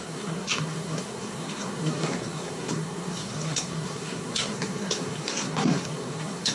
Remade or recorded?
remade